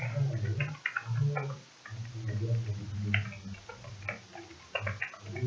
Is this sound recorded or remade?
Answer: recorded